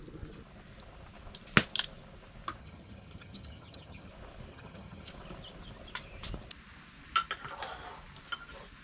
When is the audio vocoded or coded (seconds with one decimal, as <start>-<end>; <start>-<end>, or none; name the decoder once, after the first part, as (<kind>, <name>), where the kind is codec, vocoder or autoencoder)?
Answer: 2.6-4.1 (vocoder, HiFi-GAN); 4.5-5.1